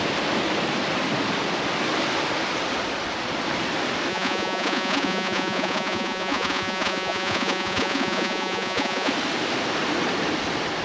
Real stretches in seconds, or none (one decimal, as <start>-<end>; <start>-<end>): 0.0-4.1; 9.1-10.8